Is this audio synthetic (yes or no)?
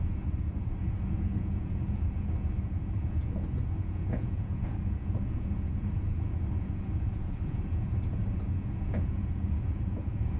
yes